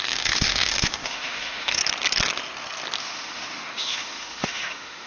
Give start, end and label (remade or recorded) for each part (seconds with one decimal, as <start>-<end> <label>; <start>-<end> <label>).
0.0-1.8 remade; 1.8-3.0 recorded; 3.0-5.1 remade